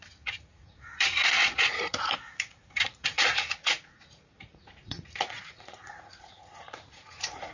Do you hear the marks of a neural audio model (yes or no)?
yes